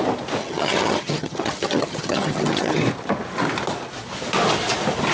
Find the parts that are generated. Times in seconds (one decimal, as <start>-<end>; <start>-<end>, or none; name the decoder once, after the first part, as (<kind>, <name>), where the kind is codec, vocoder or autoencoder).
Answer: 0.4-2.8 (vocoder, HiFi-GAN)